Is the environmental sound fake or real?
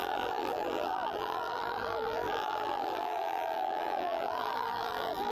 fake